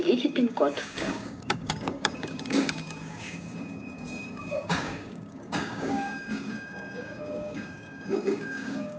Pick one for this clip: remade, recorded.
remade